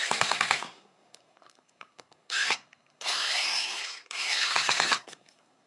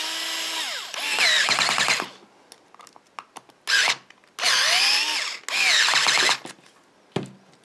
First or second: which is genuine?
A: second